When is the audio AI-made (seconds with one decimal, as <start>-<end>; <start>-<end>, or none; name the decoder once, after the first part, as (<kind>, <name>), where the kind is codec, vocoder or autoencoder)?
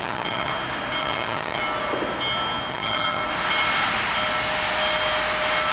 0.0-0.5 (vocoder, HiFi-GAN); 1.0-1.6; 2.7-3.2